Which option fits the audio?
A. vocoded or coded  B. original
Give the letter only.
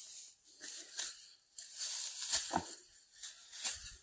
B